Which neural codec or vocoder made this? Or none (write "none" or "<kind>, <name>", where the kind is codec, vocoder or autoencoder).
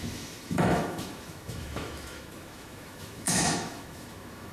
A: autoencoder, DAC-VAE